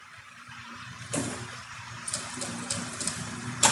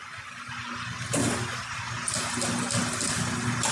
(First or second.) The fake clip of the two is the first